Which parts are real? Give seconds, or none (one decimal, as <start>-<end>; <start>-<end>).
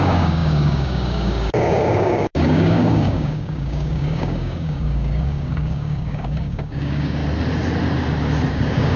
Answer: 7.2-8.5